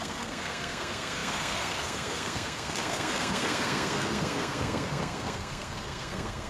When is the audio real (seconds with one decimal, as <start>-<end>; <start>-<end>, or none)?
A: none